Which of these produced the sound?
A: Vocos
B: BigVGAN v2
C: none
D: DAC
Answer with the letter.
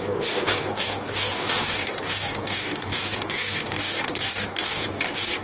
D